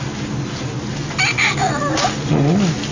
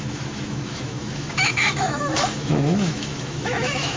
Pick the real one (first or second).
first